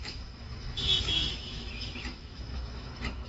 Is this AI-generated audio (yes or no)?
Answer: yes